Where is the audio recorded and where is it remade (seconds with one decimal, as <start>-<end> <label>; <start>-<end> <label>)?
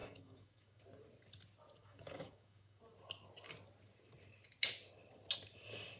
0.0-0.8 remade; 0.8-1.8 recorded; 1.8-2.8 remade; 2.8-6.0 recorded